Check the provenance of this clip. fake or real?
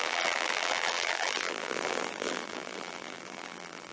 fake